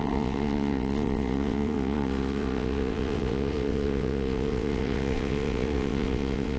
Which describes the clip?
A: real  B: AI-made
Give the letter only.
B